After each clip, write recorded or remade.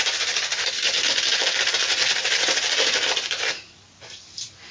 recorded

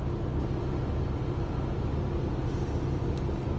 recorded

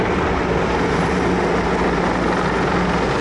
recorded